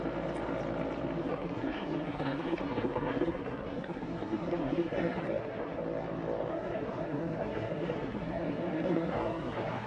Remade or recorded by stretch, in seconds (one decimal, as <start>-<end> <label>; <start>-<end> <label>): 0.0-1.2 recorded; 1.2-5.8 remade; 5.8-6.5 recorded; 6.5-9.9 remade